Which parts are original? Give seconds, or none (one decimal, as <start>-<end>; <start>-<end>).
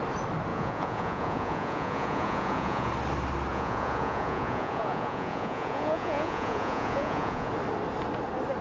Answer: 0.0-0.5; 2.9-3.5; 7.5-8.6